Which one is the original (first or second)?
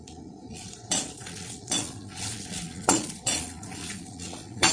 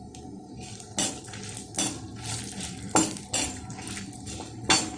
second